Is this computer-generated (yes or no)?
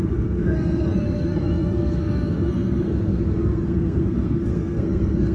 yes